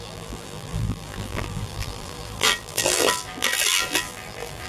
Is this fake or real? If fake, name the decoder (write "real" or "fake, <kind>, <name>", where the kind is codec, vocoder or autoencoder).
fake, vocoder, BigVGAN v2